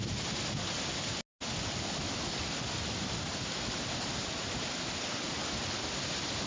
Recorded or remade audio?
recorded